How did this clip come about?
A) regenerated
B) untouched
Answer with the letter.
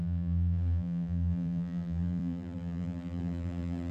A